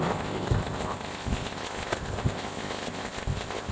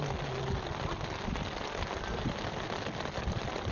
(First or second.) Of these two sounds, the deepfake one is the first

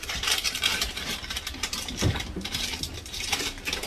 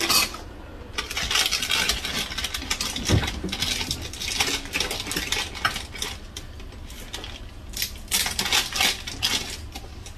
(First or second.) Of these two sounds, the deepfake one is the first